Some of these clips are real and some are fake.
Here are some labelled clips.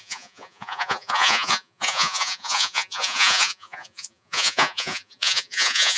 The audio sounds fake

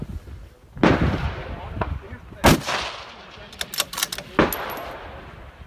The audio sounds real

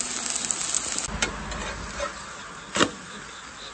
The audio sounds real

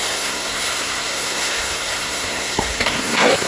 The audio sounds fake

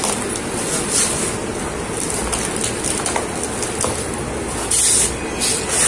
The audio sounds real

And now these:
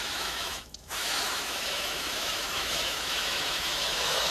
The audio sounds fake